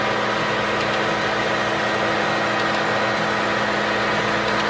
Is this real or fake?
real